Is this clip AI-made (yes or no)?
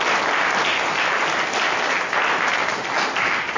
no